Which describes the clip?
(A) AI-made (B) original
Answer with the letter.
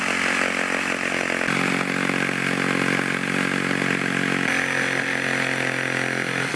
B